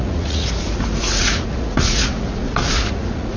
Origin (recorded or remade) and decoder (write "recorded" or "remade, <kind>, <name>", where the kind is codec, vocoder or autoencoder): remade, vocoder, Vocos